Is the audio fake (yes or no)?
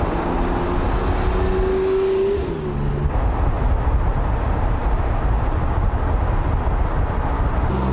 no